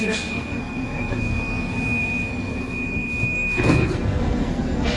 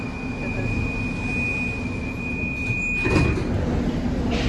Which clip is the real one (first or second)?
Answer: second